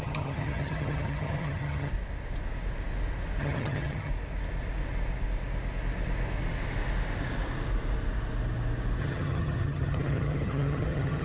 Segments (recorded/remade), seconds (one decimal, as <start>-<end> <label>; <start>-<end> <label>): 0.0-1.9 remade; 1.9-3.4 recorded; 3.4-4.1 remade; 4.1-9.0 recorded; 9.0-11.2 remade